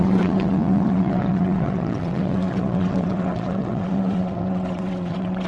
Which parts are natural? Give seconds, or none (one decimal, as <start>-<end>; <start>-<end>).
none